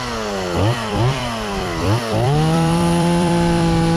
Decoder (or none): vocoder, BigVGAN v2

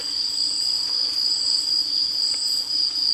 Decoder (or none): none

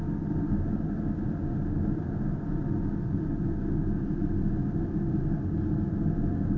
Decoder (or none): none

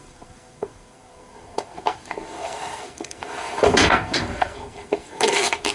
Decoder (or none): codec, SNAC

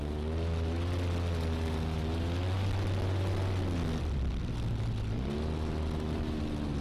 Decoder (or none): none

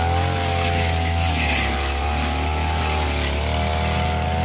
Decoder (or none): none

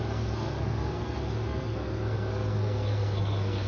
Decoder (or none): codec, SNAC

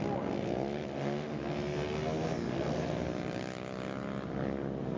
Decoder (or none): none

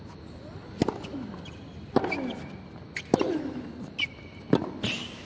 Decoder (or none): none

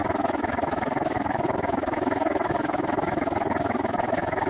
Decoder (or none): autoencoder, DAC-VAE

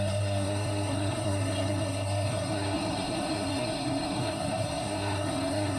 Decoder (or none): codec, SNAC